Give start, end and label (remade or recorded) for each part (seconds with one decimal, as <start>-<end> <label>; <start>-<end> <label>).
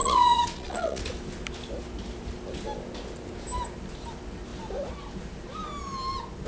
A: 0.0-1.0 remade; 1.0-6.5 recorded